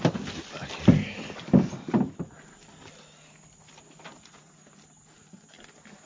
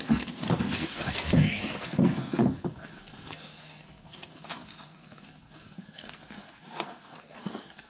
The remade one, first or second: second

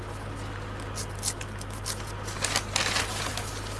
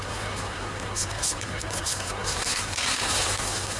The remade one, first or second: second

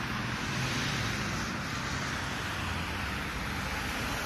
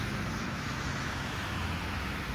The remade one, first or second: second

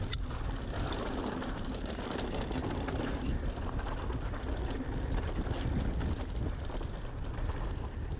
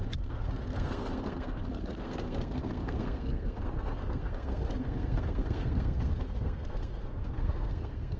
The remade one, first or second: second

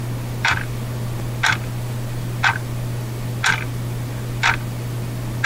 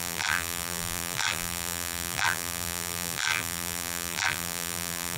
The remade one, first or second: second